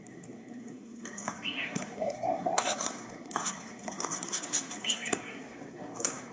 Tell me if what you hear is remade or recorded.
remade